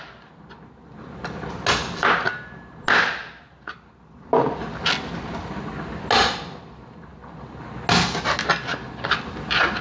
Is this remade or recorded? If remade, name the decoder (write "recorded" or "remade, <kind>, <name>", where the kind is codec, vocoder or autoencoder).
recorded